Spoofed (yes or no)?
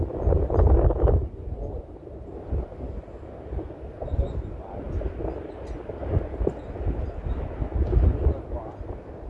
no